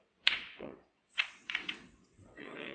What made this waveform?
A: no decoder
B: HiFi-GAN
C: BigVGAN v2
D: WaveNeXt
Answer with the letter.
D